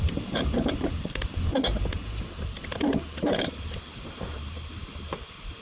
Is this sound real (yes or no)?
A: no